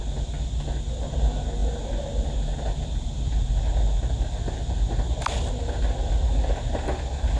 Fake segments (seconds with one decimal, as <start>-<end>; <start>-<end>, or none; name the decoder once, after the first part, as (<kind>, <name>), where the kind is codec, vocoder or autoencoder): none